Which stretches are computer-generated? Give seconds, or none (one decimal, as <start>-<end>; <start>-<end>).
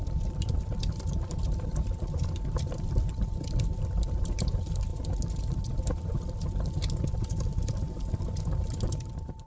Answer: none